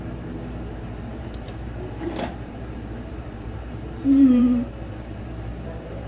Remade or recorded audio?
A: remade